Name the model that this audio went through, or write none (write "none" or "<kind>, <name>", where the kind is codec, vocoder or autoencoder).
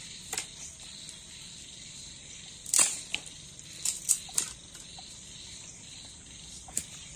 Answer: vocoder, BigVGAN v2